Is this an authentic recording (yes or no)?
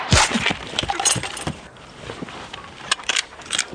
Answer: yes